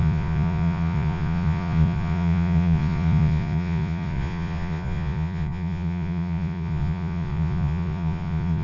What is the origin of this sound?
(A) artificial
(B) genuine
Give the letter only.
A